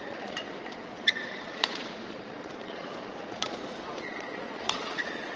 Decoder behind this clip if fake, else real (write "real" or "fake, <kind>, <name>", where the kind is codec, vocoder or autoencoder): fake, vocoder, Vocos